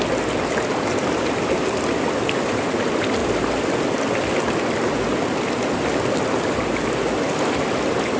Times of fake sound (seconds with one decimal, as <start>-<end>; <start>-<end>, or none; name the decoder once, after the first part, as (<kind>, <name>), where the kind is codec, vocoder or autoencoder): none